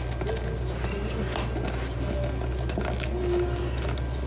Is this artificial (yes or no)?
no